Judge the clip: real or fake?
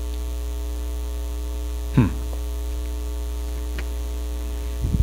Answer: real